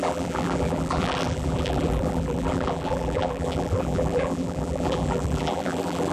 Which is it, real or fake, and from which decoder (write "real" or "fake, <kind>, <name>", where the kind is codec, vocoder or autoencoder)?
fake, vocoder, BigVGAN v2